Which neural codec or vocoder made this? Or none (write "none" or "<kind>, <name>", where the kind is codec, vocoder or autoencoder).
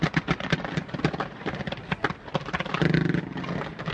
none